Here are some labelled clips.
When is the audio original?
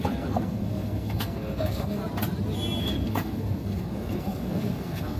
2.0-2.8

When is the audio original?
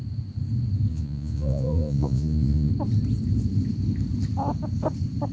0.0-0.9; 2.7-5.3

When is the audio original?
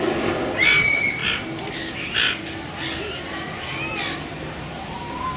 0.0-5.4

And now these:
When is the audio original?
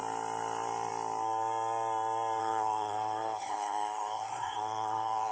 0.0-2.4